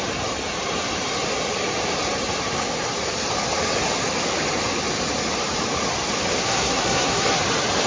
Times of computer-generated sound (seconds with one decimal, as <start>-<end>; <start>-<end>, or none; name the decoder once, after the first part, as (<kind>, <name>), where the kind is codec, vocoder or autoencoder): 6.4-7.4 (codec, SNAC)